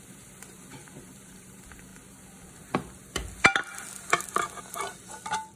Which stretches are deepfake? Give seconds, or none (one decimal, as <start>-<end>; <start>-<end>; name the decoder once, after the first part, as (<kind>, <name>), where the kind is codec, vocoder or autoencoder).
0.0-1.9 (vocoder, BigVGAN v2); 2.5-3.2; 4.6-5.6